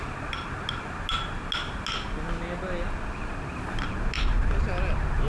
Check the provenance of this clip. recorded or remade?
recorded